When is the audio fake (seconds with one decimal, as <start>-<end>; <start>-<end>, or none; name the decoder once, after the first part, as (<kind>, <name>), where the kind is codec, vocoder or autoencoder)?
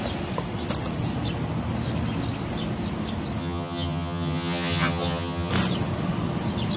3.4-5.5 (vocoder, HiFi-GAN)